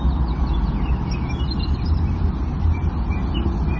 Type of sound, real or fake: real